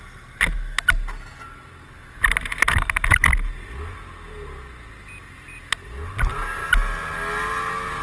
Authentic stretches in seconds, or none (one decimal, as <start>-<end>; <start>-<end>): 0.0-8.0